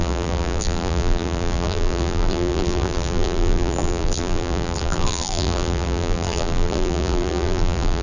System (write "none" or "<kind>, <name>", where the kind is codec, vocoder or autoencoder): vocoder, BigVGAN v2